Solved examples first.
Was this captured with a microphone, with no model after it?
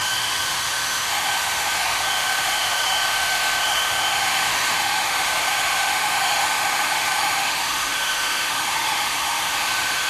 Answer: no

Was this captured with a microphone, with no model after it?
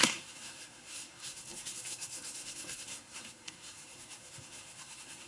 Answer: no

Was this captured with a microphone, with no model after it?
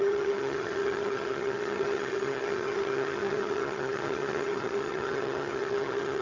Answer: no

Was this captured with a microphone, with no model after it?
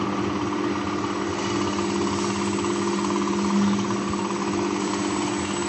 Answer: yes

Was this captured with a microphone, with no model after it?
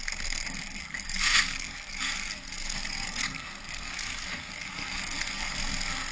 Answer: no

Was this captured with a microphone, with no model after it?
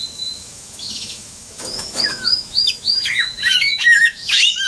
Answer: no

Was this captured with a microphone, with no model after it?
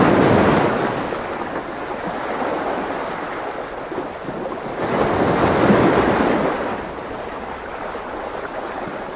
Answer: yes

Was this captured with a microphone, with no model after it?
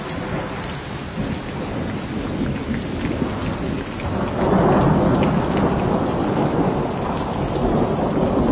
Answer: yes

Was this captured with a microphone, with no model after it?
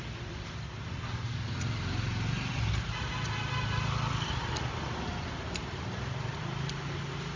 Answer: yes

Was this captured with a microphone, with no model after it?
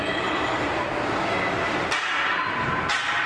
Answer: yes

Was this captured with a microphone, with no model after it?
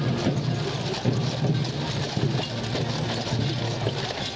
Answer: yes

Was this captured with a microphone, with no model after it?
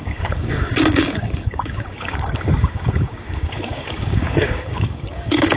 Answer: no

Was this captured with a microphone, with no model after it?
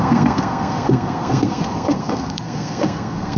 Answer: no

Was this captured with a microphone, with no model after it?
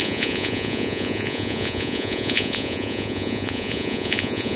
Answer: no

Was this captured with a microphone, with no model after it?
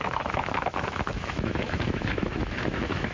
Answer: no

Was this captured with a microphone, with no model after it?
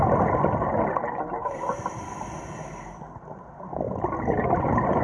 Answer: yes